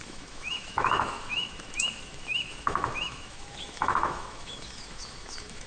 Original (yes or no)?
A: no